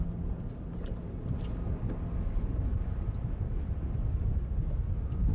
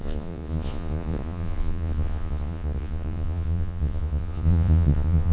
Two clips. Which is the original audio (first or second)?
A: first